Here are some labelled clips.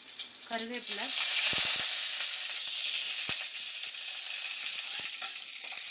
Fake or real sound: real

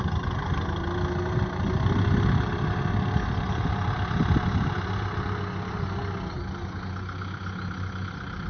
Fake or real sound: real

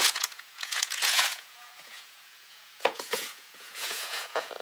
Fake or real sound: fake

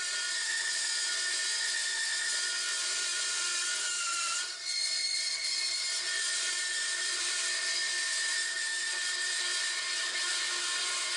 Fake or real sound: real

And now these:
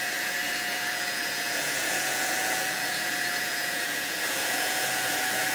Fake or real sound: fake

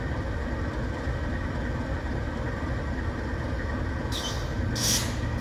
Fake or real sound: real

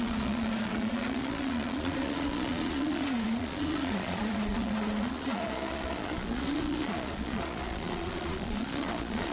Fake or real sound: fake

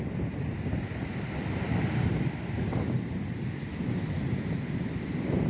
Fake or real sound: real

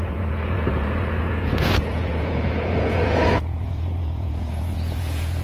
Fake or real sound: fake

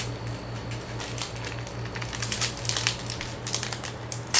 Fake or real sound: real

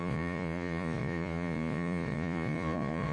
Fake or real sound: fake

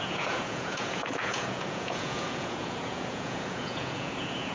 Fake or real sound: fake